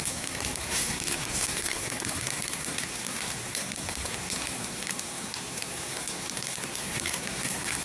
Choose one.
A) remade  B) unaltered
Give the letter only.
A